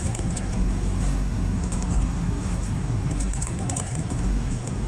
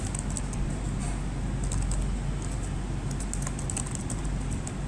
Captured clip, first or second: second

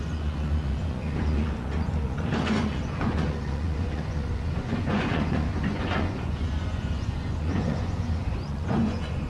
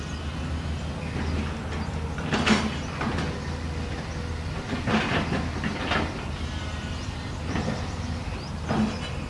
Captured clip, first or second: second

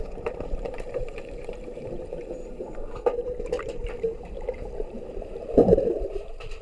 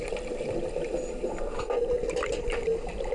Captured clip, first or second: second